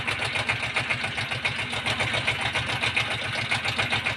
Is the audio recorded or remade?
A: recorded